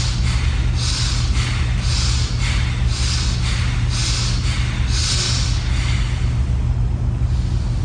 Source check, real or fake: real